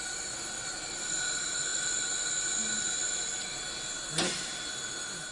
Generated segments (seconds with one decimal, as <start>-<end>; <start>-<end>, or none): none